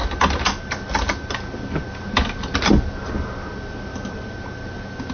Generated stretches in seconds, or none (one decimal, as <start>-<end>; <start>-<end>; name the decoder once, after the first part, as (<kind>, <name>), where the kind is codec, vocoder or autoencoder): none